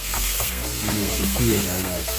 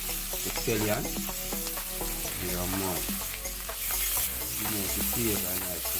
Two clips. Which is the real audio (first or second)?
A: second